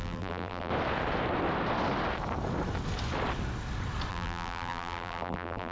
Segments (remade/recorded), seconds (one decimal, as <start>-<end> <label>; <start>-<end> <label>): 0.0-0.7 remade; 0.7-4.1 recorded; 4.1-5.7 remade